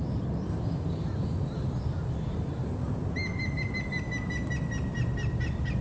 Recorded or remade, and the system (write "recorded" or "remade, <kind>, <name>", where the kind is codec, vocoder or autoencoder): recorded